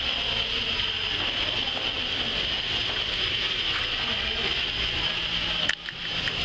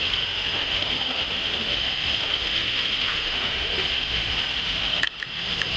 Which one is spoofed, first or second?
second